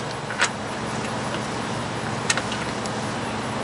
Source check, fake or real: real